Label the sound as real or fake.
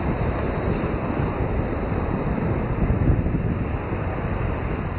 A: real